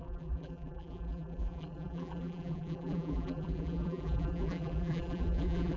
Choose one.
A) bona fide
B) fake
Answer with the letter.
B